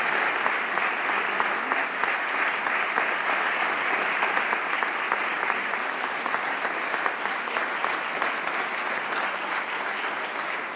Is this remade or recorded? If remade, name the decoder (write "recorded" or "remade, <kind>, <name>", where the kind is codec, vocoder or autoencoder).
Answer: recorded